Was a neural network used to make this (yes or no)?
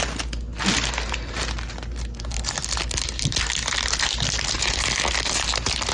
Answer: no